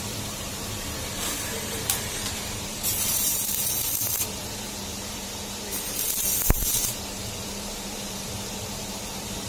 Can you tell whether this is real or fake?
fake